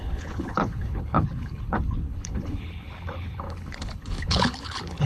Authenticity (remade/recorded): remade